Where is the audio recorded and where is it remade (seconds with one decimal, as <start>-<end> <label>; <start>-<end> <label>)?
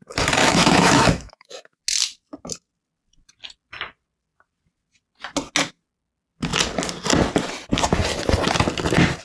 0.0-0.4 recorded; 0.4-1.8 remade; 1.8-9.2 recorded